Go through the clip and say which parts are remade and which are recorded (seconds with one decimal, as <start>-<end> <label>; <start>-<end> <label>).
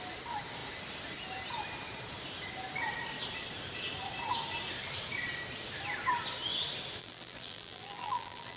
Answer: 0.0-7.0 recorded; 7.0-8.6 remade